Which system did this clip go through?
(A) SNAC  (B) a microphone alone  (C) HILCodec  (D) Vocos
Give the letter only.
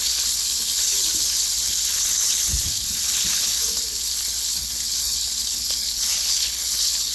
C